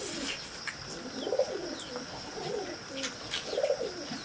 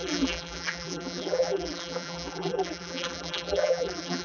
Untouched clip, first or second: first